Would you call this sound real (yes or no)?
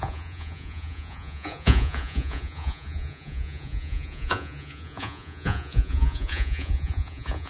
no